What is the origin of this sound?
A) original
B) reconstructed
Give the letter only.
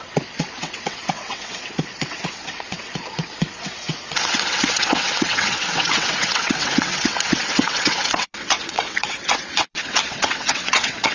B